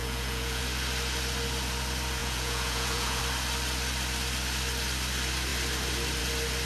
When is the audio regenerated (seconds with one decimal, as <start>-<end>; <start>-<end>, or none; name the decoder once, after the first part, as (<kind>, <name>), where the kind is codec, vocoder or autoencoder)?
0.0-0.6 (vocoder, Vocos); 2.2-3.2